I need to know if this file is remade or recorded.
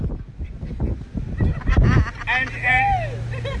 recorded